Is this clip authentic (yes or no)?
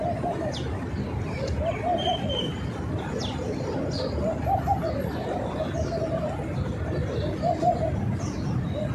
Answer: yes